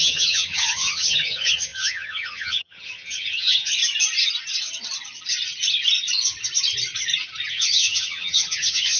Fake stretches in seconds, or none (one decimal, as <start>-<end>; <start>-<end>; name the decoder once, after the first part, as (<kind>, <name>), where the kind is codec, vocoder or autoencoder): 0.0-3.8 (vocoder, HiFi-GAN); 7.5-9.0